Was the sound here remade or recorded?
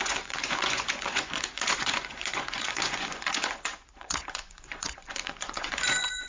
remade